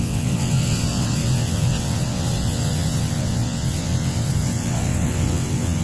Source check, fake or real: fake